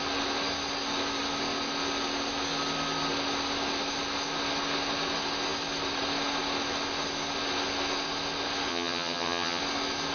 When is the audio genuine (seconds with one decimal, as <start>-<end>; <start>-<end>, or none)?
0.0-8.7; 9.6-10.1